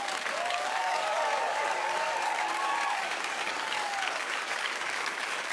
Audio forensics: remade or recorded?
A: remade